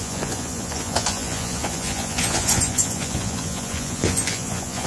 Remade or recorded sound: remade